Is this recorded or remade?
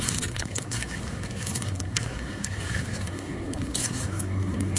remade